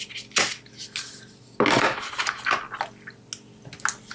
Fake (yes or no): no